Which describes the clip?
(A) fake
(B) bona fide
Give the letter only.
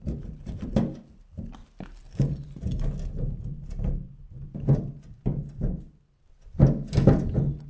B